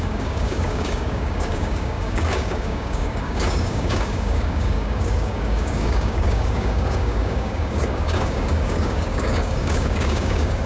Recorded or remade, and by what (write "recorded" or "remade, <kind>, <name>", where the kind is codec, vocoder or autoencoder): remade, codec, DAC